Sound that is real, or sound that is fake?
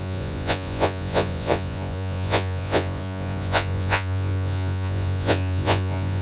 fake